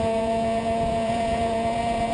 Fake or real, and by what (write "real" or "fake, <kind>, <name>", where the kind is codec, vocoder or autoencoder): fake, vocoder, Vocos